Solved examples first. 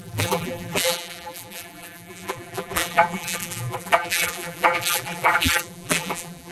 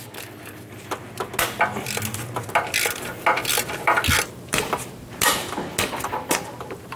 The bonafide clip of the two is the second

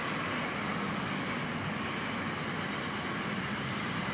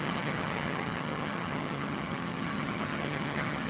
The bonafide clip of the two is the first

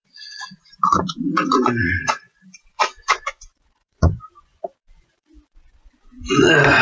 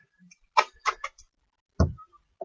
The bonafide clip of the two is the second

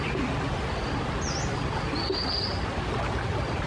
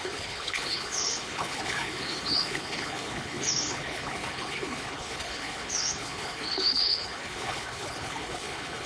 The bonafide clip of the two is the first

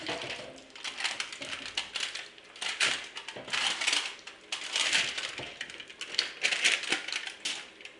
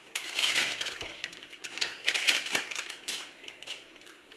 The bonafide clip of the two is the first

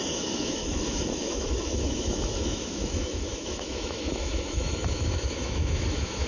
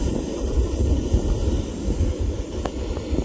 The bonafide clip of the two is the second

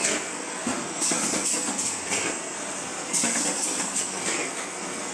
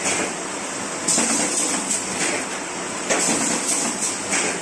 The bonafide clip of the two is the second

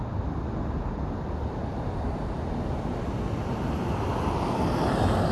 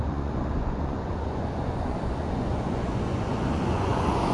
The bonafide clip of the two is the first